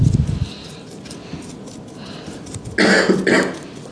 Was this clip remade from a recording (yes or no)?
no